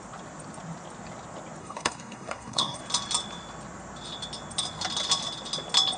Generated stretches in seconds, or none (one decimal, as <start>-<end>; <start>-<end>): 1.6-2.8